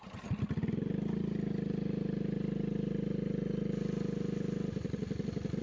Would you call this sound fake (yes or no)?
no